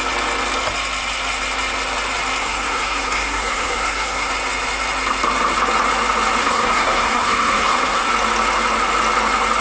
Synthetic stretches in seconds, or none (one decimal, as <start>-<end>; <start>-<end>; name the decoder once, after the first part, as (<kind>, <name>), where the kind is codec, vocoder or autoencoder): 2.4-4.3 (codec, SNAC); 6.4-8.1